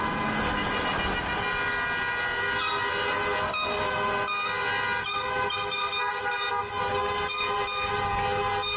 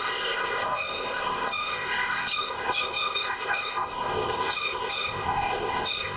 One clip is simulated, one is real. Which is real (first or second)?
first